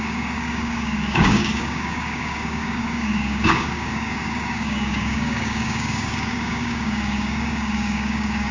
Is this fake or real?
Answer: fake